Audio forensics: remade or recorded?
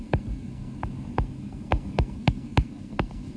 remade